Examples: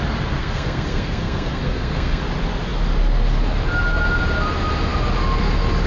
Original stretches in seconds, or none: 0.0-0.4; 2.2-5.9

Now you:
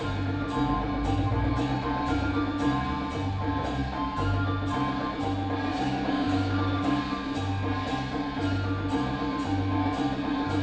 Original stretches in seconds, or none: 0.0-5.7; 7.0-10.6

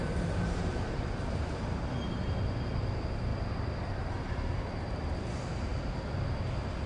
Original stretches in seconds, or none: 1.9-2.7; 3.3-4.0; 5.7-6.9